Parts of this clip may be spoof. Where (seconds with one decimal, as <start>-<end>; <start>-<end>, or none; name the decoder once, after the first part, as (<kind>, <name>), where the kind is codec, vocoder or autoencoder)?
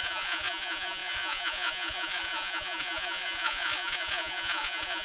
0.0-5.0 (vocoder, Vocos)